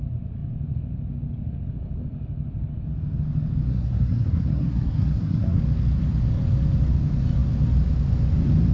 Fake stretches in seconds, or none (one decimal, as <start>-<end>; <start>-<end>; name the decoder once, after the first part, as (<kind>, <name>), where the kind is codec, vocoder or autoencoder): 3.7-5.6 (codec, SNAC)